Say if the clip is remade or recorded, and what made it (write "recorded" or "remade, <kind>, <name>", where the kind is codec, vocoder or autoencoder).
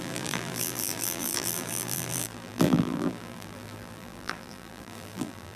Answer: remade, vocoder, BigVGAN v2